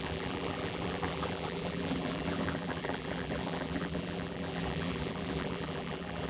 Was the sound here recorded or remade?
remade